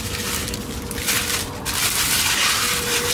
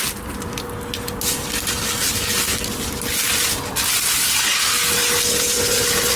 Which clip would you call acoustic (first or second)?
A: second